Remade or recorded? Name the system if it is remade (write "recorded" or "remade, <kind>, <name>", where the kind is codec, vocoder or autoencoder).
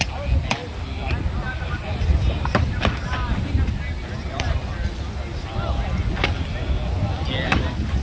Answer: recorded